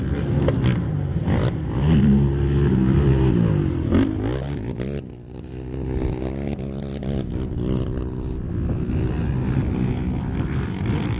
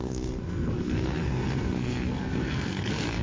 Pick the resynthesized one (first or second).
second